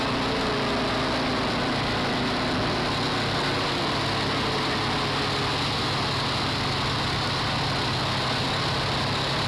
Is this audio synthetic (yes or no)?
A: no